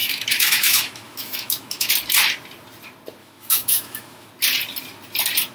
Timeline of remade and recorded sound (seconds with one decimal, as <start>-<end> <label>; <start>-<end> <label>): 0.0-1.9 remade; 1.9-3.2 recorded; 3.2-4.3 remade; 4.3-5.5 recorded